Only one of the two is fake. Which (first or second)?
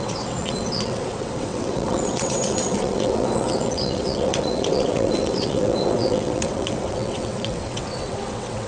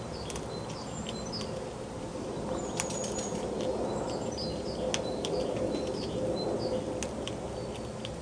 first